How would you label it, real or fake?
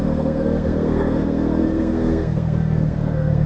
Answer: fake